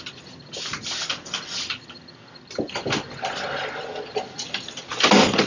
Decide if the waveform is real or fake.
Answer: real